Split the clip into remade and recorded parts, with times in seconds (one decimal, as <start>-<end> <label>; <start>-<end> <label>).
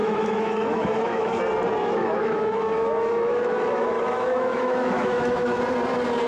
0.0-1.4 remade; 1.4-1.8 recorded; 1.8-5.6 remade; 5.6-6.3 recorded